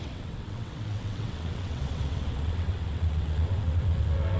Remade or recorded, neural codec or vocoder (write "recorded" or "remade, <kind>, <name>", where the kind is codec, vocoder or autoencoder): remade, vocoder, WaveNeXt